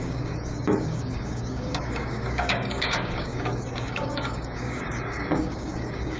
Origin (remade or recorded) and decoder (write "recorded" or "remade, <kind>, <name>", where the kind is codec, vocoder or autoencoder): remade, codec, DAC